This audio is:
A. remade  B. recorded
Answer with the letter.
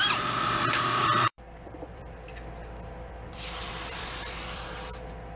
A